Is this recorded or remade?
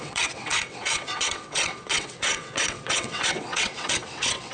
remade